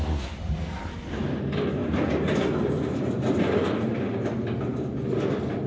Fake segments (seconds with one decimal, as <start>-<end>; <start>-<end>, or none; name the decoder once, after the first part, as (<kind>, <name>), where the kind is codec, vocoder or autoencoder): none